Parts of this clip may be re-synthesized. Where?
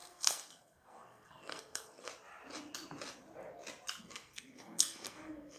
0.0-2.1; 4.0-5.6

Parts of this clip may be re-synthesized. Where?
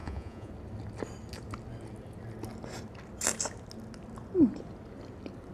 0.0-0.5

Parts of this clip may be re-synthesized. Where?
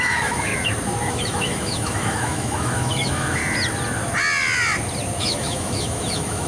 0.0-0.5; 1.1-3.4; 5.2-6.5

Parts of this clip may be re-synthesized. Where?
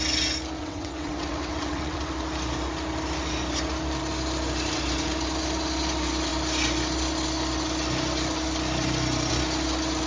0.6-2.1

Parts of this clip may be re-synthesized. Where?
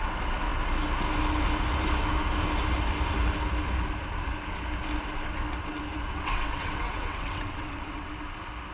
6.1-8.1